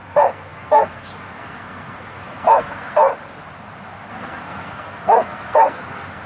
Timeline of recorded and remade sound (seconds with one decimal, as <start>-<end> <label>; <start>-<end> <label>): 0.0-3.1 remade; 3.1-4.1 recorded; 4.1-6.3 remade